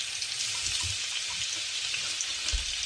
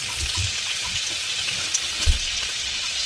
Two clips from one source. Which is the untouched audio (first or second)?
first